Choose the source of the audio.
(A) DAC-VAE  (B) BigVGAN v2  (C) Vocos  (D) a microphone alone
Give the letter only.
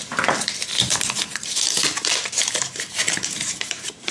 B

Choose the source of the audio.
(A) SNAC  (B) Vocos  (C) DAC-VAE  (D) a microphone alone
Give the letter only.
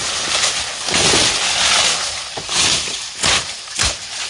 D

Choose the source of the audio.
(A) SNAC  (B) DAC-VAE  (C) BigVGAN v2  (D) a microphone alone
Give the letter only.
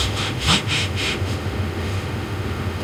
B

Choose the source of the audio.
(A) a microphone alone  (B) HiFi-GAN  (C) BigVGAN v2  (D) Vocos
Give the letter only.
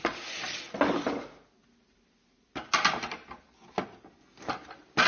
A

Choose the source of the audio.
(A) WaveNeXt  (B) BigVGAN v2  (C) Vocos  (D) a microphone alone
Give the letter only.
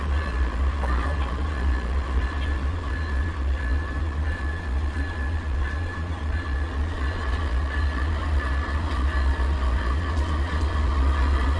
C